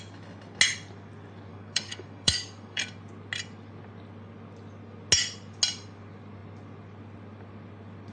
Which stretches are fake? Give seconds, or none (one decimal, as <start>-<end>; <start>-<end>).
1.5-2.8